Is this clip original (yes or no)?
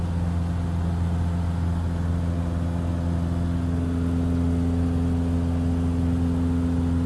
yes